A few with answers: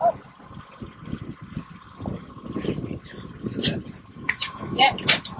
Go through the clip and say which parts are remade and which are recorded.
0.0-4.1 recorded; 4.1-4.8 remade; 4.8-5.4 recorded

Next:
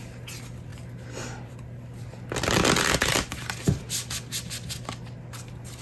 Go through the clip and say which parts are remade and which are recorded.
0.0-5.8 recorded

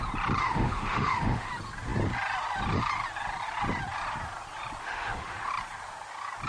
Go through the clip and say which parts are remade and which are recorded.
0.0-0.4 recorded; 0.4-1.5 remade; 1.5-4.8 recorded; 4.8-5.5 remade; 5.5-6.5 recorded